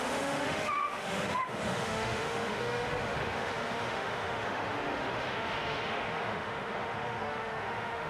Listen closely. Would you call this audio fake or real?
fake